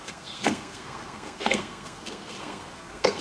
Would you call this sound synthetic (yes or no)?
yes